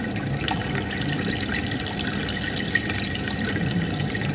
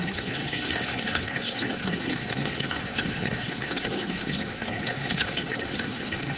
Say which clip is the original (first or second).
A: first